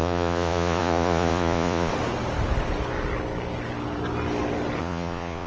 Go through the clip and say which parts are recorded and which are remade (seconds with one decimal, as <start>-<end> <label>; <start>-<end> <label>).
0.0-1.9 remade; 1.9-4.8 recorded; 4.8-5.5 remade

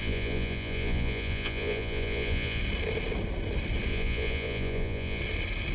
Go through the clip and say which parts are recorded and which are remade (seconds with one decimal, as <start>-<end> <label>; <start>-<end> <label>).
0.0-2.6 remade; 2.6-3.9 recorded; 3.9-5.2 remade; 5.2-5.7 recorded

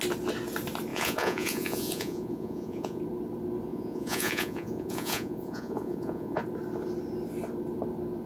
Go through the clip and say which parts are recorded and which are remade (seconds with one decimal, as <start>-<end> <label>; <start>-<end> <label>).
0.0-0.9 recorded; 0.9-3.0 remade; 3.0-3.7 recorded; 3.7-6.4 remade; 6.4-8.3 recorded